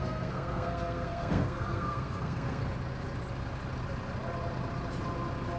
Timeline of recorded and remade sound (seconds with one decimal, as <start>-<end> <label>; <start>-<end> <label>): 0.0-2.6 remade; 2.6-5.6 recorded